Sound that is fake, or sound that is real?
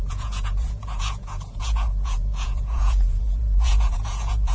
fake